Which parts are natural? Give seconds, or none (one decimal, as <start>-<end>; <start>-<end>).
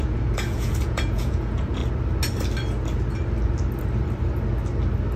1.8-5.2